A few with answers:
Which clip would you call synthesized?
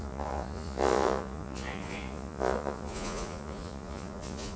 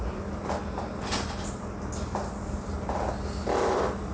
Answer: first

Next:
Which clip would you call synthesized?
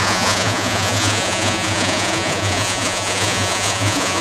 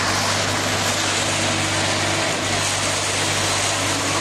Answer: first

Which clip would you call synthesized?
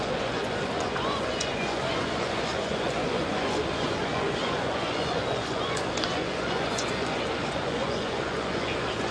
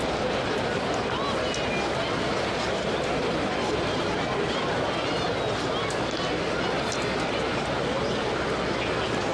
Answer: first